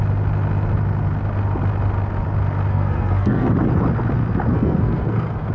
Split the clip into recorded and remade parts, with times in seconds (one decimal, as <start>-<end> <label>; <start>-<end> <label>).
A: 0.0-2.7 recorded; 2.7-3.5 remade; 3.5-4.5 recorded; 4.5-5.5 remade